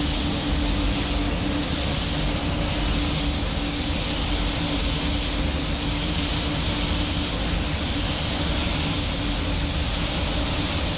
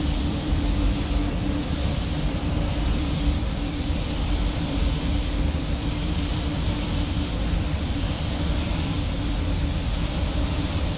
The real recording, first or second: first